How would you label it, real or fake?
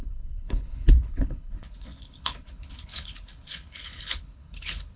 fake